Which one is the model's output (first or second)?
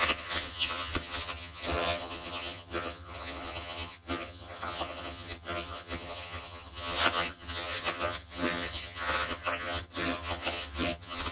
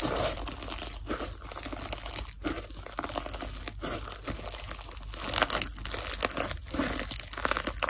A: first